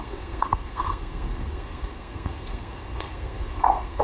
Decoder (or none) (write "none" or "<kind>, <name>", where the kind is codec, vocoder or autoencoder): codec, SNAC